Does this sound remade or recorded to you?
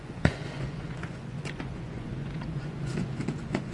remade